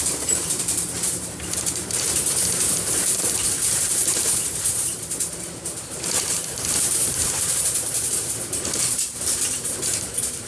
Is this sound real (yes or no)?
no